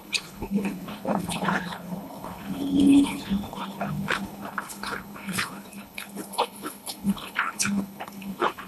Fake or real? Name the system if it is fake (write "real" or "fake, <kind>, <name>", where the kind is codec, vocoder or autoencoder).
fake, codec, HILCodec